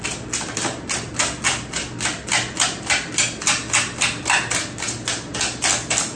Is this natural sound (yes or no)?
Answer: yes